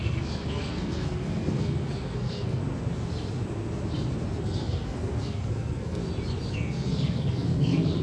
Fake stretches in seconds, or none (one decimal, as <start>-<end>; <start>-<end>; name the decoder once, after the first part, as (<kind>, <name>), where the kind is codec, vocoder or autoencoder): 0.0-2.6 (codec, SNAC); 4.4-6.0; 6.5-8.0